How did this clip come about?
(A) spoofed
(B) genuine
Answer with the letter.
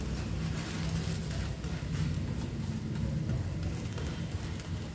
B